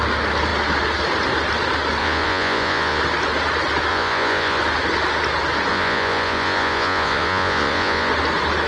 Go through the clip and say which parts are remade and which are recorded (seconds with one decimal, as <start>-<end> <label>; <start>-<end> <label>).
0.0-2.0 recorded; 2.0-3.0 remade; 3.0-3.9 recorded; 3.9-4.6 remade; 4.6-5.7 recorded; 5.7-8.1 remade; 8.1-8.7 recorded